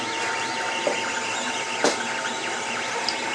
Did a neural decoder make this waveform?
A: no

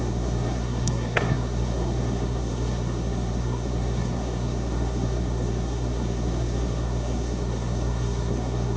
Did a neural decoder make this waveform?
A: yes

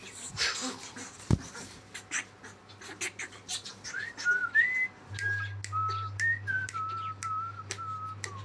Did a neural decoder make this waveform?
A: no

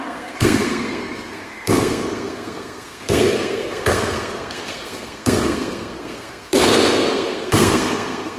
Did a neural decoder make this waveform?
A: yes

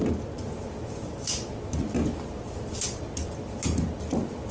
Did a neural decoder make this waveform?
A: no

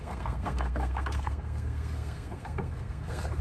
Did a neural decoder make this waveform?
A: yes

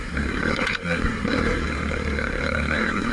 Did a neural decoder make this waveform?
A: yes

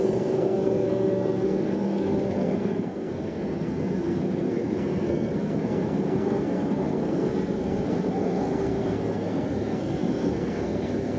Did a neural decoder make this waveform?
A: yes